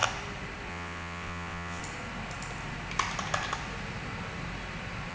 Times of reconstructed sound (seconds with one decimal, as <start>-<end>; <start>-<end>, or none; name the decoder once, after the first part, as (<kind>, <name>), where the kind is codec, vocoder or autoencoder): 0.7-1.8 (vocoder, WaveNeXt)